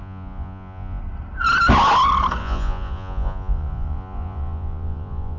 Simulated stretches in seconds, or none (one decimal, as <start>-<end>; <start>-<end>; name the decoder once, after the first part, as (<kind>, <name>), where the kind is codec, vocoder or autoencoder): 0.0-1.0 (vocoder, Vocos); 2.4-5.4